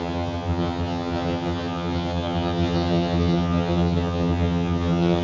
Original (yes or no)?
no